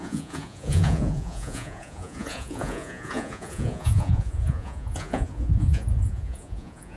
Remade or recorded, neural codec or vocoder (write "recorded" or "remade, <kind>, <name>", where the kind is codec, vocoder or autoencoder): remade, vocoder, Vocos